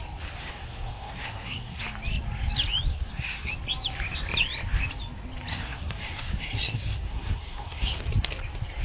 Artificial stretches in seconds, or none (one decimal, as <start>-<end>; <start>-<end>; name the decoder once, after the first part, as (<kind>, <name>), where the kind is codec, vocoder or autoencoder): 0.4-1.8 (codec, SNAC); 2.9-3.5; 5.5-8.0